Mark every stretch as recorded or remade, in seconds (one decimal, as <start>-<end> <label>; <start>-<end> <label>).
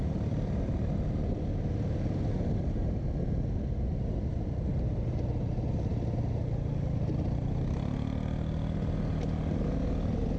0.0-10.4 recorded